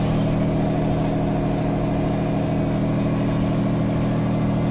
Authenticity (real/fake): real